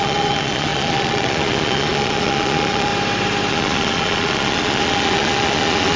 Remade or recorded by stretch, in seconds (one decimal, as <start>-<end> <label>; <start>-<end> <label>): 0.0-2.9 remade; 2.9-3.5 recorded; 3.5-6.0 remade